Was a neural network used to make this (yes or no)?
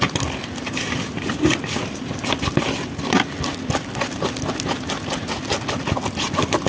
no